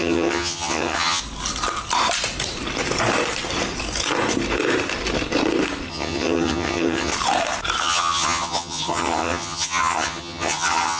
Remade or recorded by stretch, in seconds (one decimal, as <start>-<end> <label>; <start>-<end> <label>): 0.0-1.2 remade; 1.2-5.9 recorded; 5.9-7.1 remade; 7.1-7.8 recorded; 7.8-11.0 remade